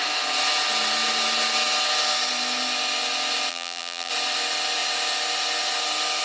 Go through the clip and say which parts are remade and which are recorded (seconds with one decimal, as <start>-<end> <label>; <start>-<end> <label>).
0.0-3.5 recorded; 3.5-4.1 remade; 4.1-6.2 recorded